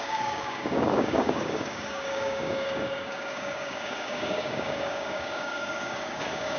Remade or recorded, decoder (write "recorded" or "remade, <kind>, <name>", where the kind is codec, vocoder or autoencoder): remade, codec, DAC